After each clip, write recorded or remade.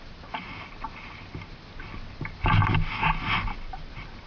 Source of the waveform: recorded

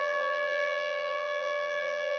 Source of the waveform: remade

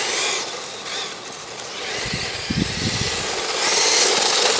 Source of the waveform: recorded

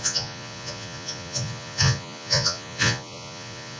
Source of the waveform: remade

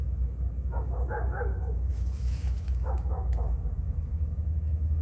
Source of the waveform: remade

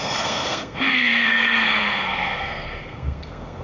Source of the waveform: remade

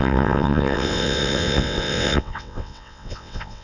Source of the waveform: remade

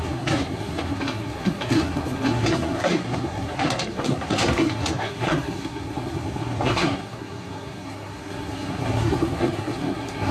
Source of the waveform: remade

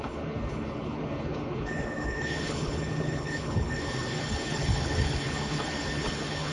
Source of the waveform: remade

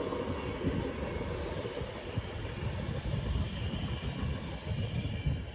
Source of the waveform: recorded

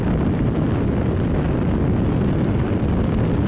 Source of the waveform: remade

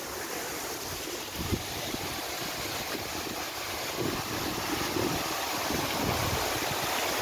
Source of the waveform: recorded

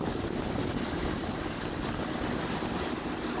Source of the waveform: recorded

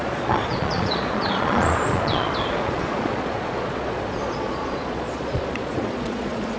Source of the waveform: remade